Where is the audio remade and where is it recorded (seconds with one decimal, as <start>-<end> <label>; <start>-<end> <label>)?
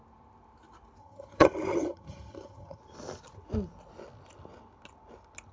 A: 0.0-1.0 recorded; 1.0-2.8 remade; 2.8-5.5 recorded